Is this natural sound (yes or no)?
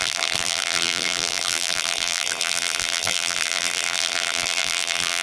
no